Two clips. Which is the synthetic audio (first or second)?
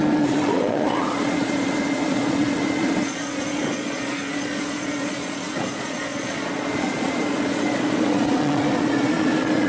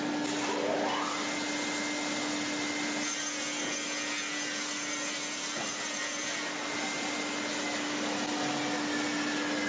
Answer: first